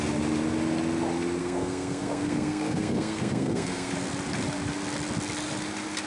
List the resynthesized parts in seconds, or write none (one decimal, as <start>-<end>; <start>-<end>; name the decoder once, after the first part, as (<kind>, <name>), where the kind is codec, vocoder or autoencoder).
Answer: 1.4-3.9 (codec, SNAC)